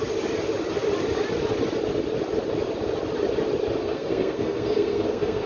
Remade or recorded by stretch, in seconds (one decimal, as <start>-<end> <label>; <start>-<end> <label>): 0.0-3.8 recorded; 3.8-5.5 remade